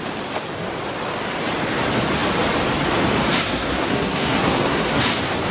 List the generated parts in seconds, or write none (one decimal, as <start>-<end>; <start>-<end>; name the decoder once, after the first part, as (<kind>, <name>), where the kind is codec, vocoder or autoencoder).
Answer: 3.4-5.0 (codec, SNAC)